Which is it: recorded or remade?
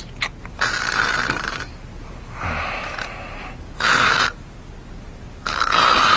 recorded